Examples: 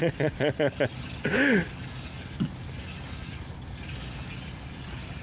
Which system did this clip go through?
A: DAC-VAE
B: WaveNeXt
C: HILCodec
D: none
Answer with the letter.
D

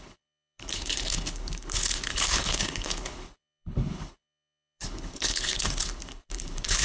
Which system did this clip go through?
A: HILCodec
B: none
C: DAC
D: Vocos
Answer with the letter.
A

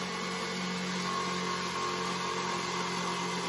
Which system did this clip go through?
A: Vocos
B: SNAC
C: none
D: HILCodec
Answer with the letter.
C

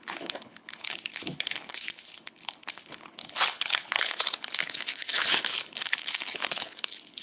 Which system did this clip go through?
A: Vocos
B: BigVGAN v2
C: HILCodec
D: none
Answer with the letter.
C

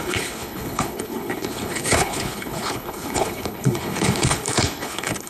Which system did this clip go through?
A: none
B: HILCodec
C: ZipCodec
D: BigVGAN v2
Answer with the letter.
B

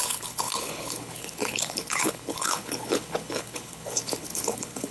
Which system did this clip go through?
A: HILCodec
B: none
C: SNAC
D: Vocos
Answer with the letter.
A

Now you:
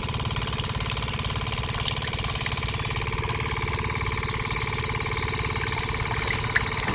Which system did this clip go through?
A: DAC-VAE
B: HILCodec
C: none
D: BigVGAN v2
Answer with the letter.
C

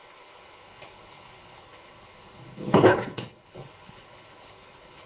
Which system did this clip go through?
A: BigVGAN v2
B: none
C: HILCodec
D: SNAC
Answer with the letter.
C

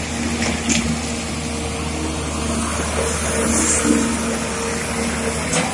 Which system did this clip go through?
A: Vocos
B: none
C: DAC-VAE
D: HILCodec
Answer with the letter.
B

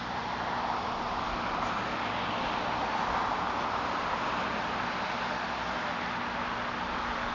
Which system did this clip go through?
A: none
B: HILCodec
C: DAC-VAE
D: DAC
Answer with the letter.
A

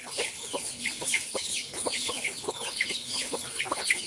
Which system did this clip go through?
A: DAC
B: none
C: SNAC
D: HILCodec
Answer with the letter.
D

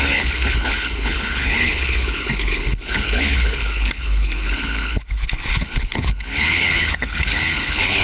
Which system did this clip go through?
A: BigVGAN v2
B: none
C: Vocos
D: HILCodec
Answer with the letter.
D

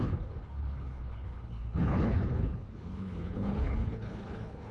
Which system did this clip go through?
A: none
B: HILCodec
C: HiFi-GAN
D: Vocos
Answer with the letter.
B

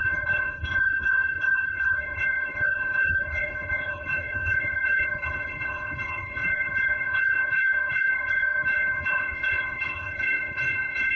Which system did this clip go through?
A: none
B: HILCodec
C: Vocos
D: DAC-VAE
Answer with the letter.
B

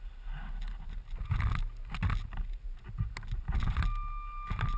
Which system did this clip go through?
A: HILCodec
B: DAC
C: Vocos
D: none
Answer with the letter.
D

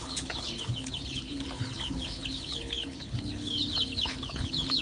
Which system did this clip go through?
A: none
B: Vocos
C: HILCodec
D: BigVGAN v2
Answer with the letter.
C